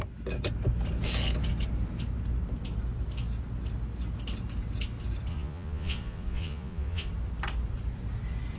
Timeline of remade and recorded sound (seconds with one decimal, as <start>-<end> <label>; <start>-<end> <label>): 0.0-5.3 recorded; 5.3-7.1 remade; 7.1-8.6 recorded